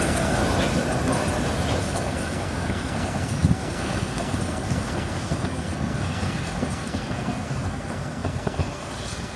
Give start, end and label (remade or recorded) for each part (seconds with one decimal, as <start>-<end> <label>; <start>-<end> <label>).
0.0-0.4 remade; 0.4-1.8 recorded; 1.8-9.4 remade